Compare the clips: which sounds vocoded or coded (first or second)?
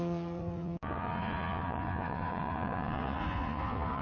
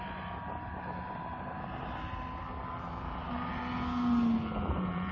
first